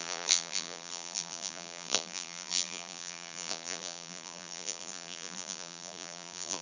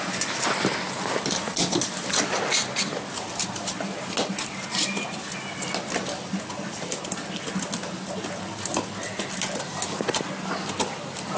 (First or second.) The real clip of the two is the second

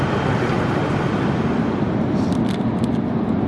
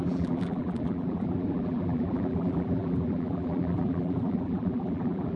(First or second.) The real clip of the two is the first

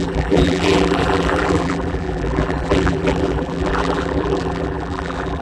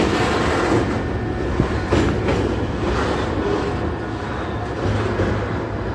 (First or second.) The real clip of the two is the second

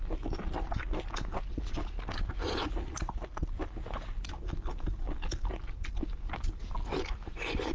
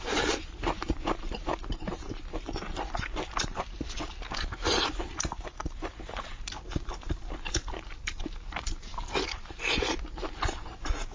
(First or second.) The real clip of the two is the first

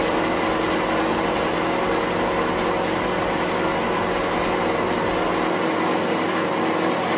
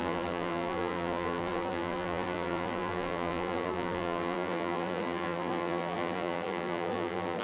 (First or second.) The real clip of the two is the first